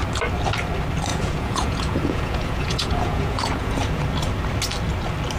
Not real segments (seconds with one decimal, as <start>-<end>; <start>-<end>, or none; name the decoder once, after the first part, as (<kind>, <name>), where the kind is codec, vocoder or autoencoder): 1.1-4.0 (vocoder, Vocos)